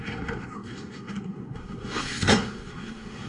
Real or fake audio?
fake